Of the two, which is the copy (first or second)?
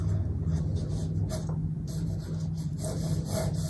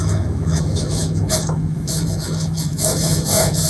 second